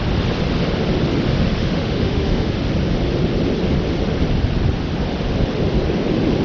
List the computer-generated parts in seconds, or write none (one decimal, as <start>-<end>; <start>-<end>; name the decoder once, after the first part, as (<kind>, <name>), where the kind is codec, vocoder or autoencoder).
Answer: 1.6-2.5 (autoencoder, DAC-VAE)